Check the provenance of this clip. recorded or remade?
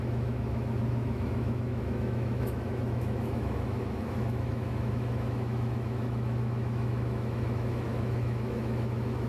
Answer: remade